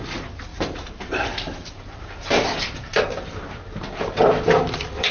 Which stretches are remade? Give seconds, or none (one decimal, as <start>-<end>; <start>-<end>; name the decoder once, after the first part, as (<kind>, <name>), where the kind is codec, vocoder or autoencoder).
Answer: 0.5-3.6 (vocoder, BigVGAN v2)